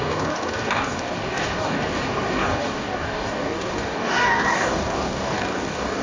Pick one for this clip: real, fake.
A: fake